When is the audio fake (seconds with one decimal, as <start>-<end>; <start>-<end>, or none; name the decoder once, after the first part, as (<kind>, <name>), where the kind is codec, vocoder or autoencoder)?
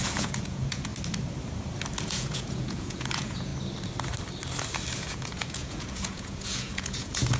0.0-0.9 (vocoder, Vocos); 2.1-3.5; 5.0-7.4